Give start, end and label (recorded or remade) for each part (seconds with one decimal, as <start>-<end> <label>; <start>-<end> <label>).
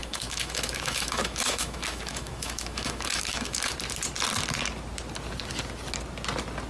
0.0-3.7 remade; 3.7-6.7 recorded